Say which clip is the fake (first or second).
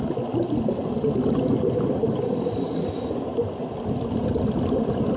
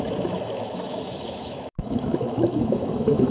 second